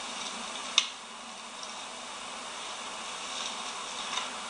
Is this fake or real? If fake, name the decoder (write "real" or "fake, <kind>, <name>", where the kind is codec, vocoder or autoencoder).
real